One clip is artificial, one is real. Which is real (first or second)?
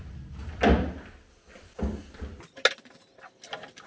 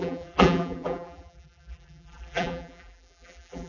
first